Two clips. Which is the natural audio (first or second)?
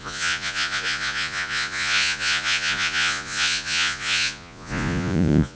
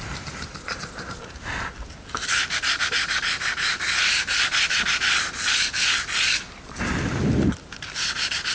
second